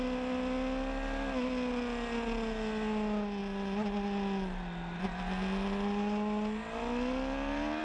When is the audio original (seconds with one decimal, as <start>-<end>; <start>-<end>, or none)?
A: 0.0-7.8

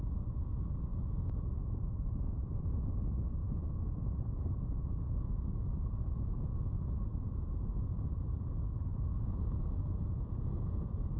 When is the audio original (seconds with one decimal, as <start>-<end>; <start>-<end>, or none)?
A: 0.0-0.9; 2.6-3.4; 6.8-8.9

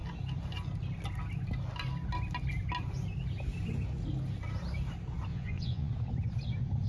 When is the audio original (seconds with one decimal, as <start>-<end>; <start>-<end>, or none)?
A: 0.0-5.3; 5.9-6.9

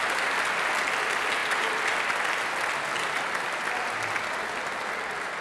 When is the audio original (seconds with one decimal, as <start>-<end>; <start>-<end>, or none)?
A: 0.0-5.4

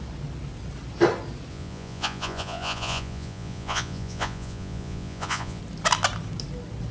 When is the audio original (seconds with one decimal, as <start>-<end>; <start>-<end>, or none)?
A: 0.0-1.5; 5.6-6.9

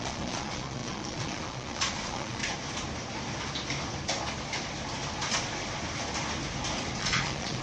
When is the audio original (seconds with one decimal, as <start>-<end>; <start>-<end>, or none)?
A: 2.4-7.0